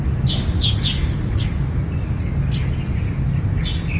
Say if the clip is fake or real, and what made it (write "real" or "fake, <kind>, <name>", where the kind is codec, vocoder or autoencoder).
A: real